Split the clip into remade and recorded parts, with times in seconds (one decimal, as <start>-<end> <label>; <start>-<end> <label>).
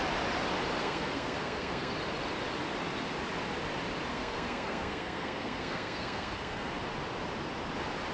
0.0-0.8 recorded; 0.8-1.9 remade; 1.9-4.1 recorded; 4.1-6.7 remade; 6.7-8.1 recorded